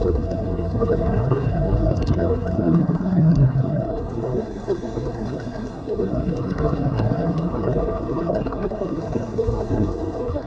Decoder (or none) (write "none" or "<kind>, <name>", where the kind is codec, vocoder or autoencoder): codec, SNAC